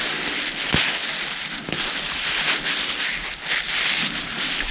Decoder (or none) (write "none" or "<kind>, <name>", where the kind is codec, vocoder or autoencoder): none